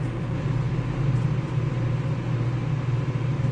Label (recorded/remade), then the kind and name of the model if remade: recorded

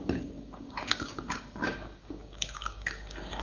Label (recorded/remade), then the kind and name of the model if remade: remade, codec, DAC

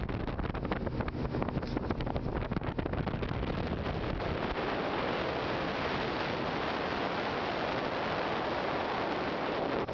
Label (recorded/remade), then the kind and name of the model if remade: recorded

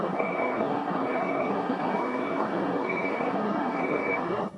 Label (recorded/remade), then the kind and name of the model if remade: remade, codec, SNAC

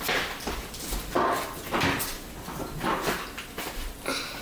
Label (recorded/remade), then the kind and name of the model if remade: recorded